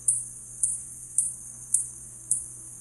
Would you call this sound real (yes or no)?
no